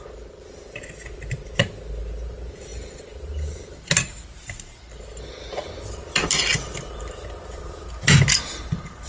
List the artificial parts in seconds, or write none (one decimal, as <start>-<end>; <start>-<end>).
none